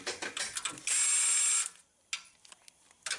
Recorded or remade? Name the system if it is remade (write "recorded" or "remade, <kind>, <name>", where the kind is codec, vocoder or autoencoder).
recorded